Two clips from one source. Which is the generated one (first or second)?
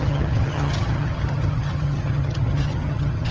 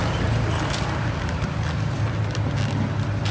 first